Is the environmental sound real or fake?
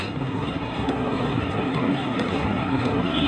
fake